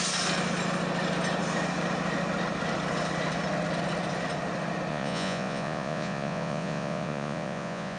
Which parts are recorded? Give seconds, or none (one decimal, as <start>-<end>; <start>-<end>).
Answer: 0.0-4.9